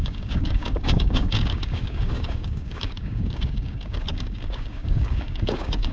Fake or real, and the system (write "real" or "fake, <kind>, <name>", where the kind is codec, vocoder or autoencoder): fake, codec, DAC